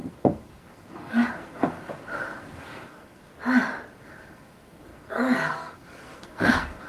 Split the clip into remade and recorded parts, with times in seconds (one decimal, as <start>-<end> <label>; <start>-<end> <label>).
0.0-3.3 remade; 3.3-4.0 recorded; 4.0-6.9 remade

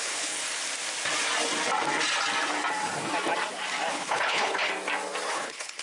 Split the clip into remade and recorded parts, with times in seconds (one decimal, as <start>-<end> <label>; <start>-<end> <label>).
0.0-0.4 remade; 0.4-3.9 recorded; 3.9-4.7 remade; 4.7-5.3 recorded; 5.3-5.8 remade

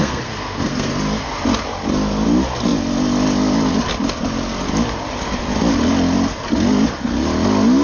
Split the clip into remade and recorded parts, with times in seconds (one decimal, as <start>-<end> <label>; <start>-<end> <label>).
0.0-0.9 remade; 0.9-7.8 recorded

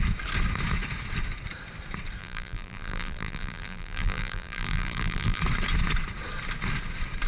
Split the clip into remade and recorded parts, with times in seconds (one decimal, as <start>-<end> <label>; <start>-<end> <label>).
0.0-2.2 recorded; 2.2-5.4 remade; 5.4-7.3 recorded

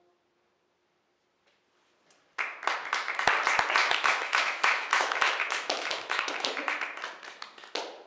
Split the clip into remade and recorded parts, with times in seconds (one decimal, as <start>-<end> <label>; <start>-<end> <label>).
0.0-3.8 recorded; 3.8-6.5 remade; 6.5-8.1 recorded

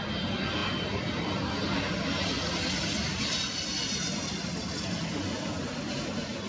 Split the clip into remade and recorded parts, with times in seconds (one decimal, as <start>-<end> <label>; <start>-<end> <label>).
0.0-6.5 recorded

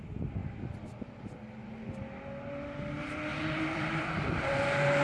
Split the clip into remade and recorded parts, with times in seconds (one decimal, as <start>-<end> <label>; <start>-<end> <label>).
0.0-0.4 remade; 0.4-3.0 recorded; 3.0-5.0 remade

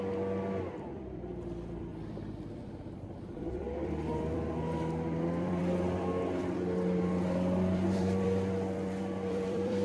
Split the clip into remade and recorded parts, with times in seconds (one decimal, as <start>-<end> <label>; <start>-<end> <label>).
0.0-9.8 remade